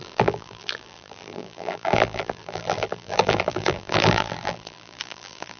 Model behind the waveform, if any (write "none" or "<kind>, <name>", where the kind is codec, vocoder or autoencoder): vocoder, BigVGAN v2